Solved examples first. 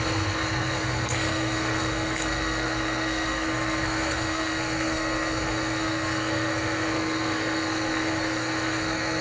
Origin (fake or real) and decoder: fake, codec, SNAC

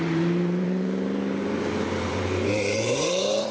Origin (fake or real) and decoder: fake, vocoder, BigVGAN v2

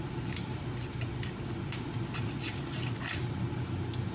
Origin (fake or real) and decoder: real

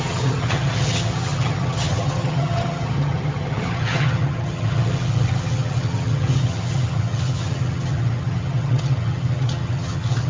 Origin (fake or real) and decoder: fake, vocoder, HiFi-GAN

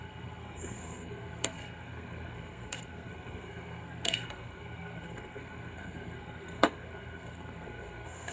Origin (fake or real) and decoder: fake, codec, SNAC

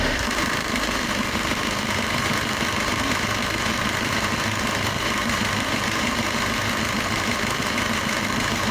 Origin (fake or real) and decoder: fake, autoencoder, DAC-VAE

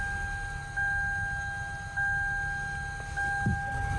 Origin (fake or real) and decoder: real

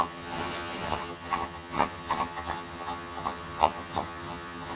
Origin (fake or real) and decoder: fake, vocoder, HiFi-GAN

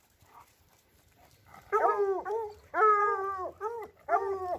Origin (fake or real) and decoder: real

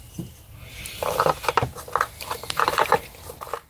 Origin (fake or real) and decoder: real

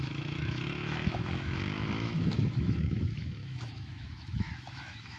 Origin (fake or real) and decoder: fake, autoencoder, DAC-VAE